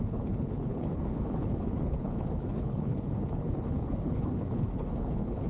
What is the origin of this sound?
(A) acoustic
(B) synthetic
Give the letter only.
B